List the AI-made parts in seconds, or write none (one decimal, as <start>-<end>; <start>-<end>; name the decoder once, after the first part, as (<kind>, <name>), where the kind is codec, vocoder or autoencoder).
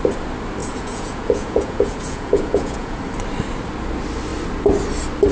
0.6-3.0 (vocoder, Vocos)